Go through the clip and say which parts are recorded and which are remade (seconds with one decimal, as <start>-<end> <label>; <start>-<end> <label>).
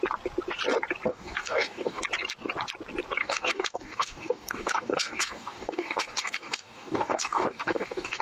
0.0-1.1 recorded; 1.1-2.0 remade; 2.0-3.2 recorded; 3.2-8.2 remade